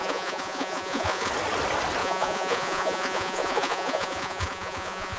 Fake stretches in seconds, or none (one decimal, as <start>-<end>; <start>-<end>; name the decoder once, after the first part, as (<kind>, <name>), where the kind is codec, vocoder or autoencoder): 0.0-1.3 (vocoder, Vocos); 2.0-5.2